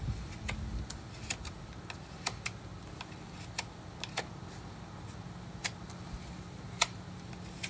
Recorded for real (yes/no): yes